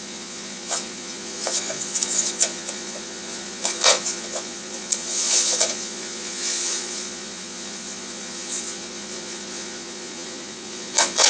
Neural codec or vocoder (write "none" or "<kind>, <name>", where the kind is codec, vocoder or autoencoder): vocoder, Vocos